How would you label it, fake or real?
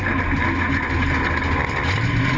real